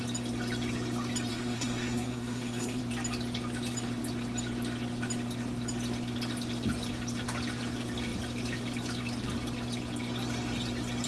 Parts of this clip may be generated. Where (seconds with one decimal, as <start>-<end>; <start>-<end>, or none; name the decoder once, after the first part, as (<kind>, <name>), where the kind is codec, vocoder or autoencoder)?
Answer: 1.3-2.8 (codec, SNAC)